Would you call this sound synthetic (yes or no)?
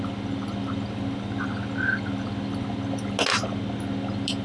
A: no